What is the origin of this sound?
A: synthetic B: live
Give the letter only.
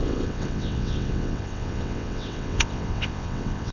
A